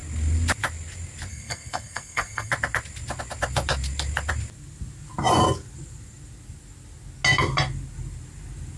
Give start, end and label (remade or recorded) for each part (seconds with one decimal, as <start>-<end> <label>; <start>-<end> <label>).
0.0-1.3 recorded; 1.3-2.5 remade; 2.5-8.8 recorded